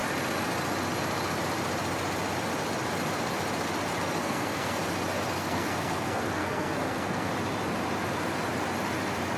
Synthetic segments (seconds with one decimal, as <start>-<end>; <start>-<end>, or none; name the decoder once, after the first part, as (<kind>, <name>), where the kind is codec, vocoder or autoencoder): 4.2-4.8 (codec, SNAC); 5.4-7.3

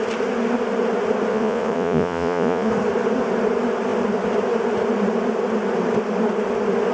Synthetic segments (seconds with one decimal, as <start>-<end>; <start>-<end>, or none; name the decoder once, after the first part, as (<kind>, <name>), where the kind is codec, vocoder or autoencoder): 1.3-2.7 (vocoder, Vocos)

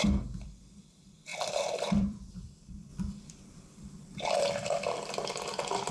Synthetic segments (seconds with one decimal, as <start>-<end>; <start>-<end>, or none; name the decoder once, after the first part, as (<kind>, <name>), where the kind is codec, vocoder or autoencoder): 0.0-2.9 (vocoder, BigVGAN v2)

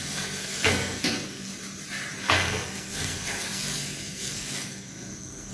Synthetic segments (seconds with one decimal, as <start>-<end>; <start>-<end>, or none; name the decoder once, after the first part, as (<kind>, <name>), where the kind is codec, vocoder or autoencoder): 0.0-1.5 (codec, SNAC); 2.2-5.5

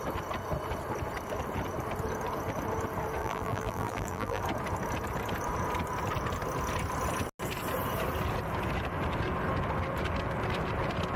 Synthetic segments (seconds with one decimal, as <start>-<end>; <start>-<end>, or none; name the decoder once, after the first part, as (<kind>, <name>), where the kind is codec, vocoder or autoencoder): 3.2-4.4 (vocoder, BigVGAN v2)

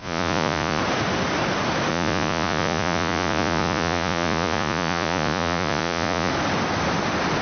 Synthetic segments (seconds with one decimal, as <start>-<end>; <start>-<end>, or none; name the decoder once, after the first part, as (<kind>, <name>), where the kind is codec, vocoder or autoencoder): 0.0-0.8 (vocoder, Vocos); 1.9-6.3

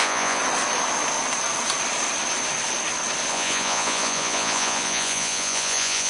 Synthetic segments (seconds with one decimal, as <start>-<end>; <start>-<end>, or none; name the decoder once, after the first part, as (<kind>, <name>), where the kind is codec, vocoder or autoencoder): 0.0-0.4 (vocoder, Vocos); 3.3-6.1